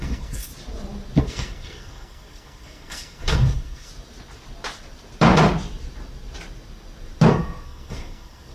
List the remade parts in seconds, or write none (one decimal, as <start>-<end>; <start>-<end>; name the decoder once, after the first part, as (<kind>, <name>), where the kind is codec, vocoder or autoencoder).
0.0-0.5 (codec, SNAC); 1.2-3.9; 7.3-8.5